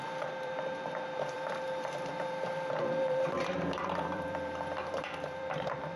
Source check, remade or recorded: remade